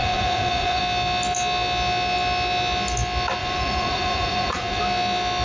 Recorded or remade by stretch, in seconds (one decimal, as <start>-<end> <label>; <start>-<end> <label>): 0.0-0.8 remade; 0.8-3.4 recorded; 3.4-4.8 remade; 4.8-5.4 recorded